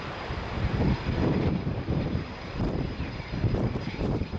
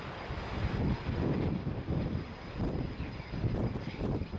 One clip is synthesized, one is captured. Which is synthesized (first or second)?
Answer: first